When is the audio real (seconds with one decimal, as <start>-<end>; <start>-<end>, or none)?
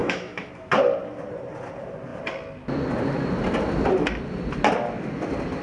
0.5-5.6